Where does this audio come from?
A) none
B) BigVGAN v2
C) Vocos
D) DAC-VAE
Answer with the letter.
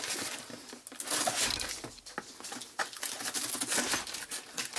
A